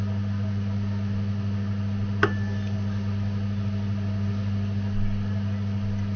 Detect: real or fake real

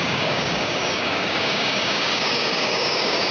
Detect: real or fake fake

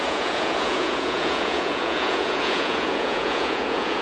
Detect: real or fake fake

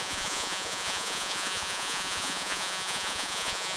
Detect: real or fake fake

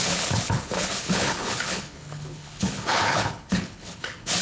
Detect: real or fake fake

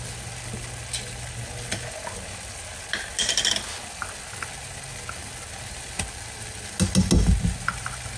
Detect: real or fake real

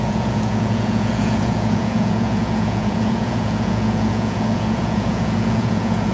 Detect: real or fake fake